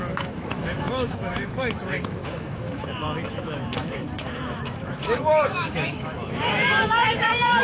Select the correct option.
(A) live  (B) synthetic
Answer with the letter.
B